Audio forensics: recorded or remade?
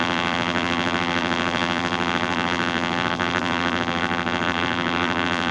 remade